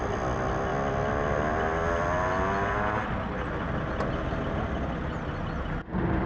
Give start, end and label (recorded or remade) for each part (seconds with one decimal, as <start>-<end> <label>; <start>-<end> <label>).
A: 0.0-6.3 recorded